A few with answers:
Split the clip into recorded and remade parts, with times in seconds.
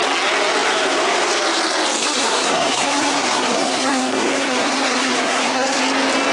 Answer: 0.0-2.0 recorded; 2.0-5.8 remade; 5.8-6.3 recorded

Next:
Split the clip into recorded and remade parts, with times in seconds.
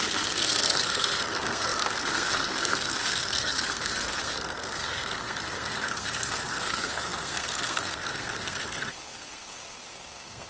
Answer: 0.0-10.5 remade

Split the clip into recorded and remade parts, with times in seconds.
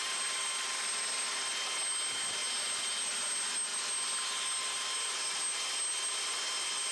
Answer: 0.0-6.9 recorded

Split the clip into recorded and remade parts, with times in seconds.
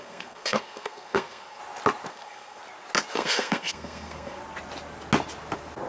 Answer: 0.0-1.6 remade; 1.6-2.1 recorded; 2.1-2.6 remade; 2.6-3.1 recorded; 3.1-4.4 remade; 4.4-5.9 recorded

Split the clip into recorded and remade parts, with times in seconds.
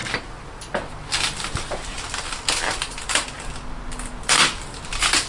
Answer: 0.0-5.3 recorded